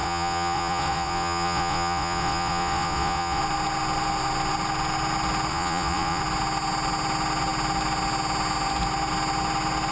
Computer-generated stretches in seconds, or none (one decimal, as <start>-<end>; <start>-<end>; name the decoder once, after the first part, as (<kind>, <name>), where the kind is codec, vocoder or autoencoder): 0.0-3.4 (vocoder, Vocos); 5.5-6.2